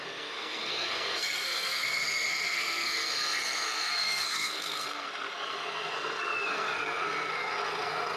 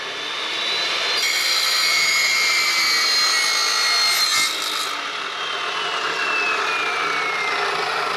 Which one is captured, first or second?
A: second